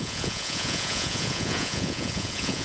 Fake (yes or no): yes